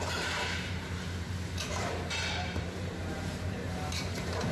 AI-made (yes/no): yes